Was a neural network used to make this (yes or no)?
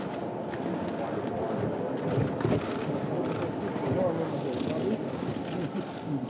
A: no